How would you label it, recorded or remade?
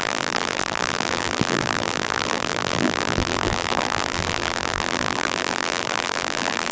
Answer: remade